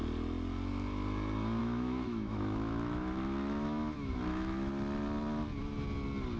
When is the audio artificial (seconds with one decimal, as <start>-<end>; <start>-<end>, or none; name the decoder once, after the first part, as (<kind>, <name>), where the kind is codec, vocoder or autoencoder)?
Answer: 1.6-4.7 (autoencoder, DAC-VAE)